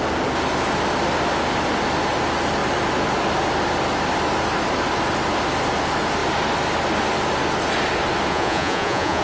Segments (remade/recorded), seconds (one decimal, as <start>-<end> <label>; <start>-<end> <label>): 0.0-8.3 recorded; 8.3-9.2 remade